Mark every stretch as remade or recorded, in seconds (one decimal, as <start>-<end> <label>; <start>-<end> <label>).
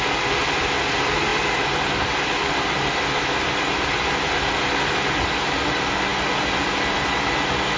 0.0-7.8 recorded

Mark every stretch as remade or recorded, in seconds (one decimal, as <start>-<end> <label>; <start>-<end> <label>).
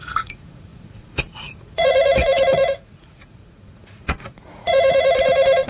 0.0-5.7 remade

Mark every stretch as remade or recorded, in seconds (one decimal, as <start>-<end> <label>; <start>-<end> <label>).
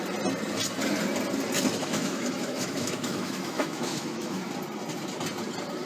0.0-1.8 recorded; 1.8-4.5 remade; 4.5-5.9 recorded